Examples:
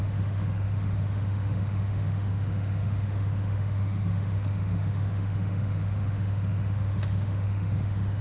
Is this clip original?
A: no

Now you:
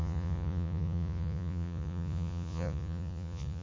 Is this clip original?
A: no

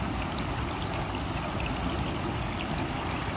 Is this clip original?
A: yes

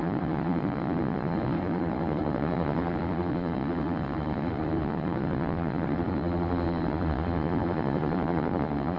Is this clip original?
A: no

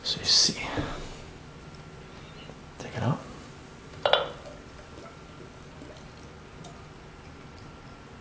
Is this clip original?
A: yes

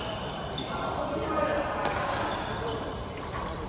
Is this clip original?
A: no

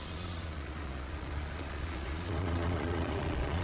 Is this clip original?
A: no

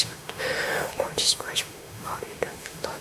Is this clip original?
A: no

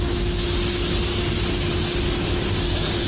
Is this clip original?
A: yes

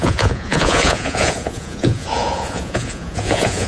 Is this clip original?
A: no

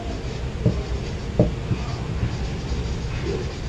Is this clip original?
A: yes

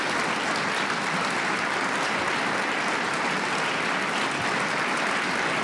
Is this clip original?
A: yes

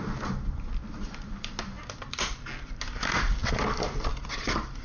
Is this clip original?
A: yes